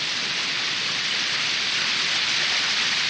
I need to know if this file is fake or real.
fake